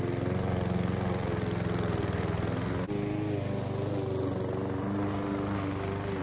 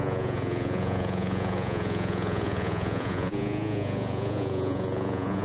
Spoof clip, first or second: second